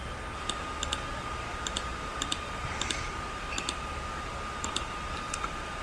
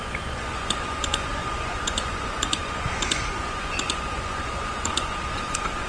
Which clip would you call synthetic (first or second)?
second